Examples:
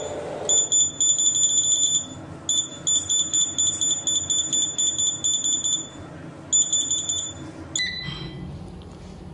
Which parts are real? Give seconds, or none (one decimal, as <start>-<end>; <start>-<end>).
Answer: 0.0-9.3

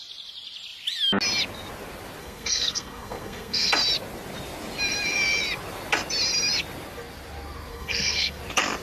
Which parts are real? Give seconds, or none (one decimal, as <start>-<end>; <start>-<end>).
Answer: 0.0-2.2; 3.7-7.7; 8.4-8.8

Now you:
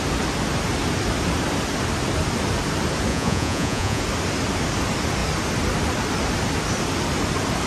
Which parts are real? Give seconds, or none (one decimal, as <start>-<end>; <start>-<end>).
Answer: 0.0-3.1; 4.0-7.7

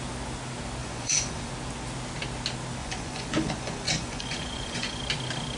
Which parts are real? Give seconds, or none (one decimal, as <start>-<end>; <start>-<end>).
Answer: 0.0-0.8; 1.5-2.8; 5.0-5.6